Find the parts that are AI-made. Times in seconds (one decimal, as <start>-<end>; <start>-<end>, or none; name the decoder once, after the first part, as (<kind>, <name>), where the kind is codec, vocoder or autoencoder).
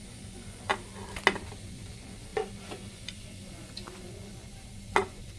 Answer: 0.0-0.7 (vocoder, Vocos); 1.6-5.4